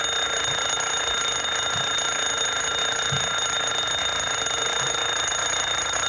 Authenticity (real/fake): real